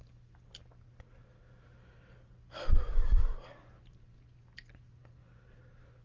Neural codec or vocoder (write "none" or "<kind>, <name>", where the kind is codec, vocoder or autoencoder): none